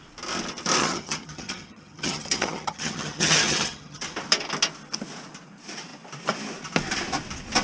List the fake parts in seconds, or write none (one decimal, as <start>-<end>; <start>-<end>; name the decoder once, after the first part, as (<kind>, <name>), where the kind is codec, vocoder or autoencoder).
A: 0.8-4.0 (vocoder, HiFi-GAN)